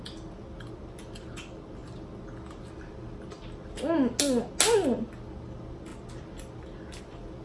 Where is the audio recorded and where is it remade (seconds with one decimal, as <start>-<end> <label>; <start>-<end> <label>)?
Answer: 0.0-7.4 recorded